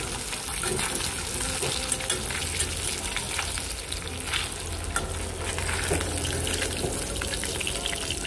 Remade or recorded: recorded